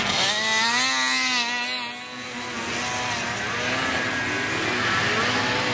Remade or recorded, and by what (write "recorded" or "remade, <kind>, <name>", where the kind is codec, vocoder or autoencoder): recorded